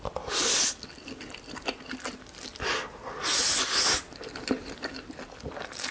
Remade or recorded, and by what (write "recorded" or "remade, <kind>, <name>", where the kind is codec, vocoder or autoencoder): recorded